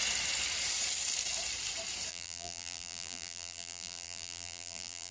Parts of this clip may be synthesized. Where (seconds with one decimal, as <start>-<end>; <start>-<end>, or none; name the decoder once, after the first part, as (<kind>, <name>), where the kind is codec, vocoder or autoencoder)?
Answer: 2.1-5.1 (vocoder, BigVGAN v2)